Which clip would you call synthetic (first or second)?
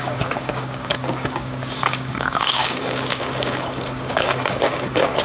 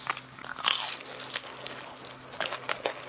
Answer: first